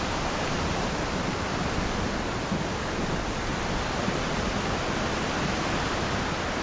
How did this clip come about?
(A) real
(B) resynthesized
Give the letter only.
A